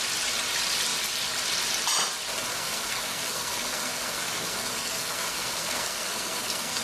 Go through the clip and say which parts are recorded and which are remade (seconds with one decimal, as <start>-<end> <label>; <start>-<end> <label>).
0.0-2.5 recorded; 2.5-6.8 remade

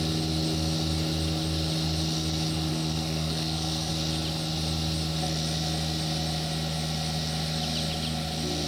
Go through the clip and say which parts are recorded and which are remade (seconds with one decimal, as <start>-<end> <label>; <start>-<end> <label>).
0.0-2.7 recorded; 2.7-3.9 remade; 3.9-8.7 recorded

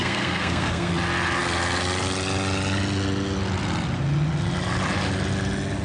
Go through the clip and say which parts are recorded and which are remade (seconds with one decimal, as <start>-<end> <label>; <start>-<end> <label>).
0.0-0.9 remade; 0.9-5.8 recorded

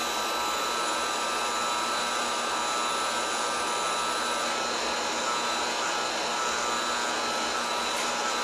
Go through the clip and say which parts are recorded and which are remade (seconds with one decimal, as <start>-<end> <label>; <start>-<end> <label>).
0.0-8.4 recorded

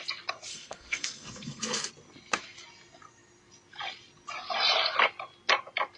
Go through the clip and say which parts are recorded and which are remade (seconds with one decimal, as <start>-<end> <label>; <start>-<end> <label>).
0.0-0.5 recorded; 0.5-1.9 remade; 1.9-6.0 recorded

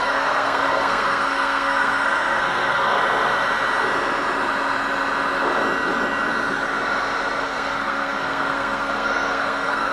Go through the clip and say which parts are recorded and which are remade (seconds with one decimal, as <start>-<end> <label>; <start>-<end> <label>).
0.0-3.0 remade; 3.0-7.4 recorded; 7.4-9.9 remade

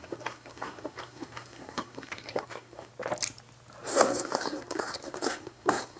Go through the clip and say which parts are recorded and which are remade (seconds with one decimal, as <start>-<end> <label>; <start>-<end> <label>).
0.0-2.9 remade; 2.9-3.9 recorded; 3.9-6.0 remade

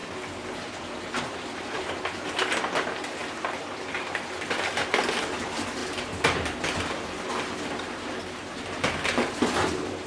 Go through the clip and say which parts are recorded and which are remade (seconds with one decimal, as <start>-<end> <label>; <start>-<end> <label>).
0.0-10.1 recorded